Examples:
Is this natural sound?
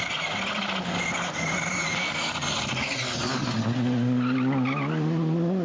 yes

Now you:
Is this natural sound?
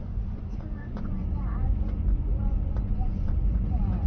no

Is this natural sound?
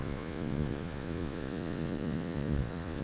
no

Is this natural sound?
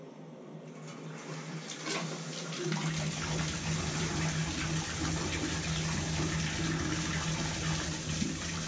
yes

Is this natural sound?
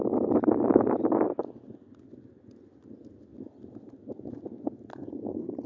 yes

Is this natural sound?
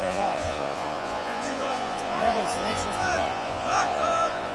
no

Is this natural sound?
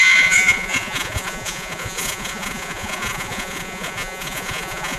no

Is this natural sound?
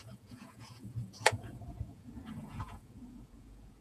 no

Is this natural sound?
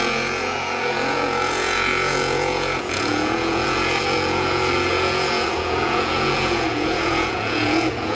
no